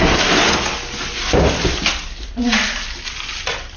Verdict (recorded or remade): recorded